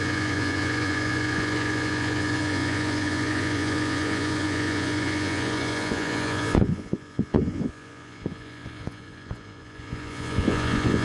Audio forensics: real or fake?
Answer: fake